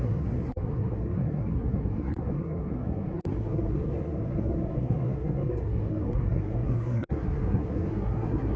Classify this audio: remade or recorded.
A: remade